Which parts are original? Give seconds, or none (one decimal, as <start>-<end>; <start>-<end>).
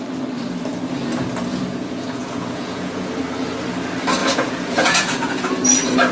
0.0-1.5; 3.1-4.2; 5.5-6.1